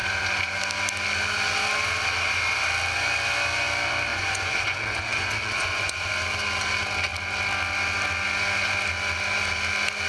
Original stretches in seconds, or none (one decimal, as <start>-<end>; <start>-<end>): 0.0-4.1; 6.1-10.1